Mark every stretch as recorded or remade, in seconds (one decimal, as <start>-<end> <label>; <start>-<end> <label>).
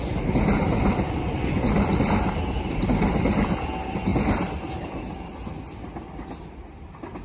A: 0.0-7.2 recorded